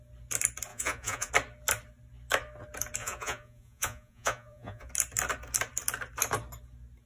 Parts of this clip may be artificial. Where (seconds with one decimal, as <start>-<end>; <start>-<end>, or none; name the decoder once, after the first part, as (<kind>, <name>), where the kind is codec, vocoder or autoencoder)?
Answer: 0.7-1.3 (vocoder, Vocos); 3.0-4.9